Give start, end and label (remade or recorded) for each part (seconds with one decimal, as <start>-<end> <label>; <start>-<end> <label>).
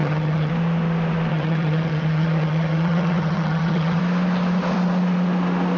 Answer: 0.0-0.5 remade; 0.5-1.3 recorded; 1.3-4.0 remade; 4.0-5.8 recorded